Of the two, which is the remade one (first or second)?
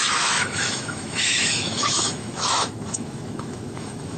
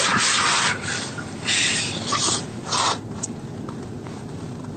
first